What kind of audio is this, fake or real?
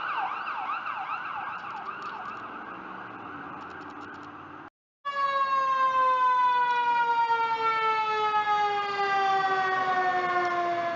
real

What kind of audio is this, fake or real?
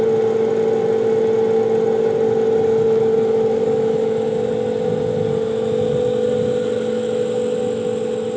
real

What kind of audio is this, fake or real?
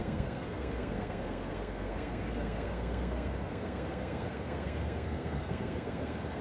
fake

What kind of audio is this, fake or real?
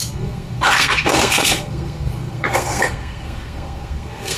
fake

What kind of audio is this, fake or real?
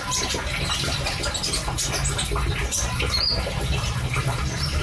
real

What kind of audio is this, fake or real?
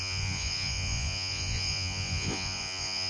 fake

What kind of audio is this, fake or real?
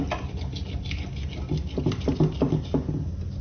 real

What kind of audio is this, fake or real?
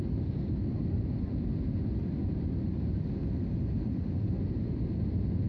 real